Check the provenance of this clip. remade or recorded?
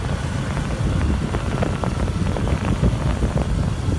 recorded